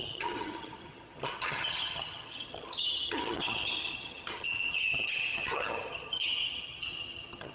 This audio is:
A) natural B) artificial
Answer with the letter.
B